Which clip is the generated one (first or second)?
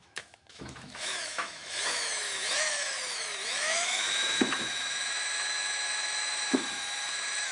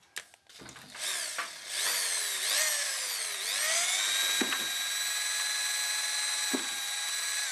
first